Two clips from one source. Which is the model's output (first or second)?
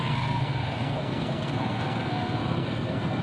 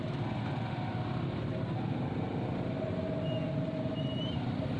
first